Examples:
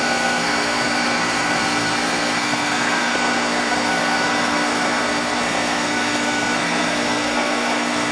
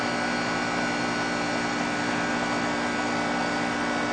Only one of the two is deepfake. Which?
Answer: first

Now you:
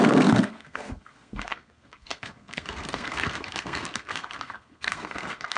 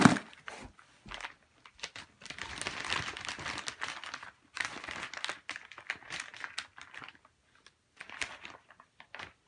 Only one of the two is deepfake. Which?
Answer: first